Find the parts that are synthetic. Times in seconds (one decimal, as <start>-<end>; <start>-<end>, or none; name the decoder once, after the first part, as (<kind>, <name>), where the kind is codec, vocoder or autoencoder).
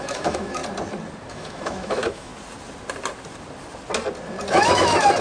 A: 0.0-0.6 (autoencoder, DAC-VAE); 1.3-2.3; 4.5-5.2